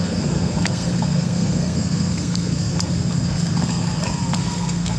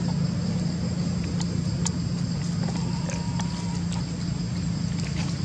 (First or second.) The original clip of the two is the second